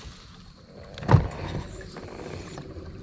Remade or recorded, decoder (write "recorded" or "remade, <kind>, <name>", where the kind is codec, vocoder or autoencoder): recorded